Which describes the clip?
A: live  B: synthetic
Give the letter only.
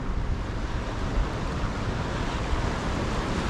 A